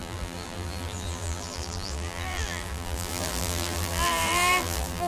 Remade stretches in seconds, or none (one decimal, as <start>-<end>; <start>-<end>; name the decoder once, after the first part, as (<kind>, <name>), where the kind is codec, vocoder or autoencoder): 0.0-5.1 (vocoder, BigVGAN v2)